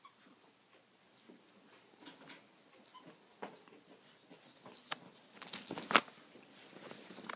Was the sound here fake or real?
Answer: real